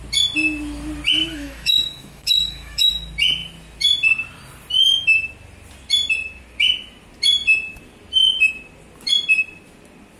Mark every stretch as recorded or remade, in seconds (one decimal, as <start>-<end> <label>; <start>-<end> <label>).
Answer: 0.0-1.2 recorded; 1.2-2.9 remade; 2.9-10.2 recorded